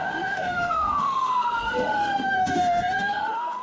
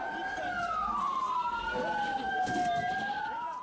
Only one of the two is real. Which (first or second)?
second